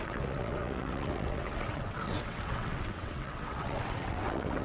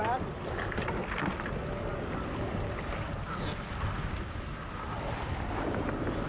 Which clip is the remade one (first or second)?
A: first